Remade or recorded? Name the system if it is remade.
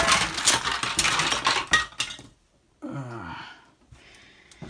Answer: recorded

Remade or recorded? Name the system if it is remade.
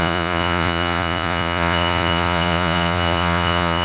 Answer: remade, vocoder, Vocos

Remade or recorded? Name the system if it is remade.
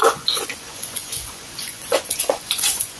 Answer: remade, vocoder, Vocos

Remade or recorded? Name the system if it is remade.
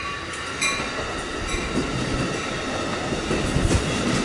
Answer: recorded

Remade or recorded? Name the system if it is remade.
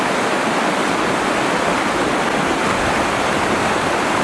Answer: recorded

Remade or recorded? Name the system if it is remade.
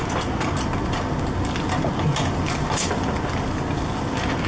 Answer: recorded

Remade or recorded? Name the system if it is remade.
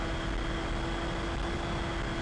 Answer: recorded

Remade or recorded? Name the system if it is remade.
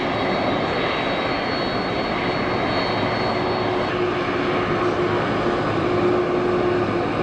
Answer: recorded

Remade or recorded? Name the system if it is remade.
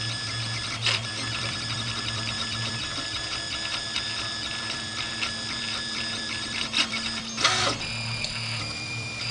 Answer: remade, vocoder, BigVGAN v2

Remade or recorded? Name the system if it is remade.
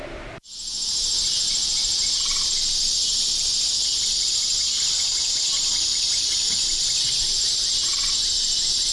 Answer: remade, vocoder, BigVGAN v2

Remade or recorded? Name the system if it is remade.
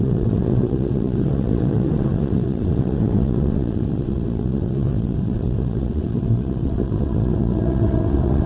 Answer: remade, vocoder, WaveNeXt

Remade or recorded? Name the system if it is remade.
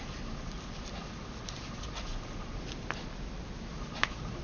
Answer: recorded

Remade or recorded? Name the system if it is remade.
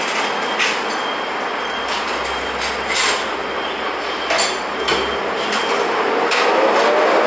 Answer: recorded